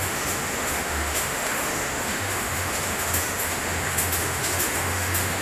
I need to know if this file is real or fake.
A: fake